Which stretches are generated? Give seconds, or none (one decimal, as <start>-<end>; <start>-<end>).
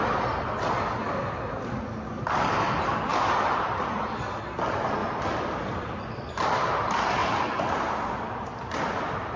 3.1-4.4; 5.0-6.7